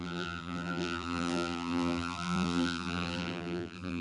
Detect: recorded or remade remade